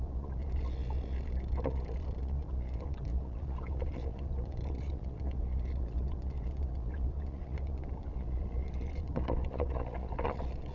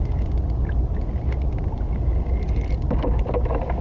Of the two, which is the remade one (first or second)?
first